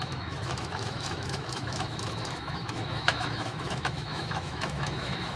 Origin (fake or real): fake